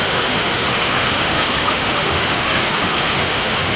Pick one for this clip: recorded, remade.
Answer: remade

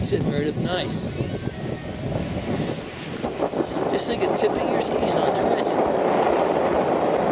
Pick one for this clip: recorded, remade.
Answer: remade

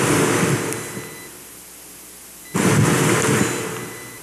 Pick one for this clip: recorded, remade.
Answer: recorded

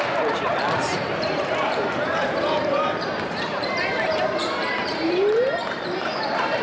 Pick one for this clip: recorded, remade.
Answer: remade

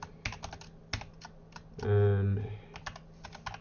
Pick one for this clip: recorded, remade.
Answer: recorded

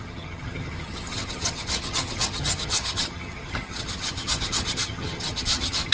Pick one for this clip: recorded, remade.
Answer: remade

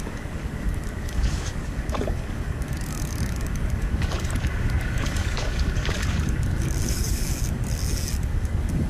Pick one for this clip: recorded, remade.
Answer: remade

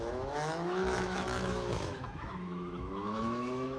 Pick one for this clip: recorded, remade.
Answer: remade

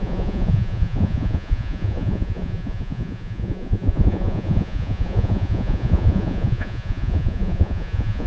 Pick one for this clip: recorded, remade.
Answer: remade